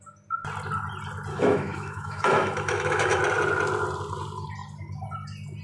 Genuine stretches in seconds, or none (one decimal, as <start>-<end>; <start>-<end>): 0.0-1.3; 3.2-5.6